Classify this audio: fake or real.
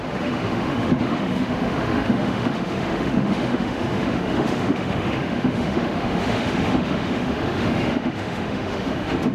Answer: fake